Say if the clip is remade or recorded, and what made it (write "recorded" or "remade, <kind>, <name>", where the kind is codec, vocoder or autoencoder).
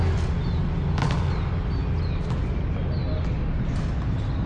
recorded